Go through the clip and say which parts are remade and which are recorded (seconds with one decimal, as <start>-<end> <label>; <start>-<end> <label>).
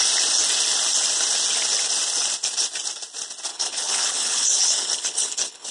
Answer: 0.0-3.5 recorded; 3.5-5.7 remade